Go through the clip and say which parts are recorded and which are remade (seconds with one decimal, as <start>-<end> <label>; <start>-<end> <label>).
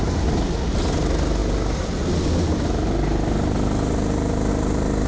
0.0-5.1 recorded